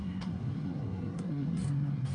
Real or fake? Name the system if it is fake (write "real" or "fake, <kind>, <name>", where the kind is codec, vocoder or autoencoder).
fake, codec, SNAC